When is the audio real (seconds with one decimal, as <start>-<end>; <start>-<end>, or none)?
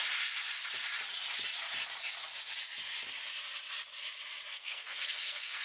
0.0-4.5